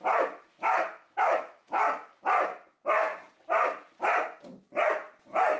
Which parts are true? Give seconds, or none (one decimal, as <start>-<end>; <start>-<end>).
0.0-0.5; 1.8-5.6